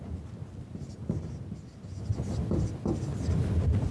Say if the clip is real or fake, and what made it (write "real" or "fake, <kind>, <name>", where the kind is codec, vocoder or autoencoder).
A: real